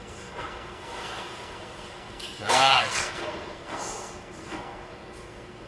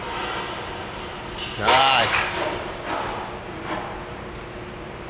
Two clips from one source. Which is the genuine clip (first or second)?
second